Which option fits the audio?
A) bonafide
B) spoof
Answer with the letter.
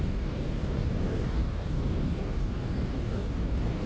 B